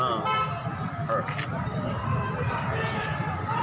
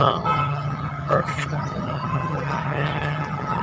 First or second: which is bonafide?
first